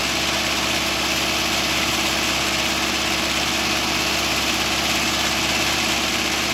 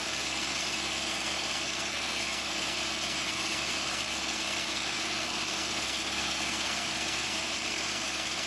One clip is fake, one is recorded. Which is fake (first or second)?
second